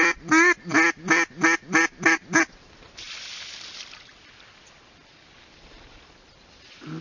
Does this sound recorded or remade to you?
recorded